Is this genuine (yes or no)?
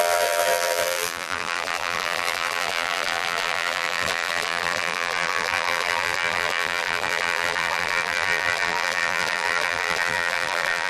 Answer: no